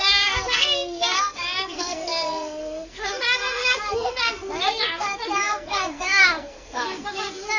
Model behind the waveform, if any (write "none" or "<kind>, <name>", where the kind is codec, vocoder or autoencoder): codec, SNAC